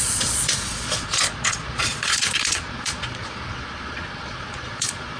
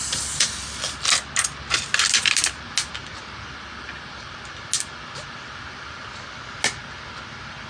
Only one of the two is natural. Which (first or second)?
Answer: second